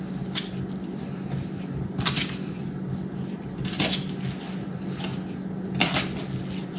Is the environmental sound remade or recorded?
recorded